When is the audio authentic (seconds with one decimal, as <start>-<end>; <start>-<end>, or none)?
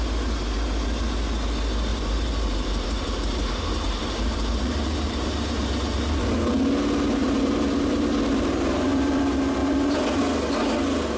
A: 0.0-1.9; 6.2-7.2; 9.2-9.6; 10.2-11.2